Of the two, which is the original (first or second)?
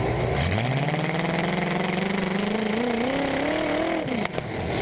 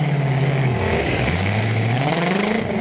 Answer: first